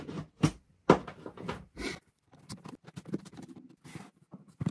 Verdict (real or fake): fake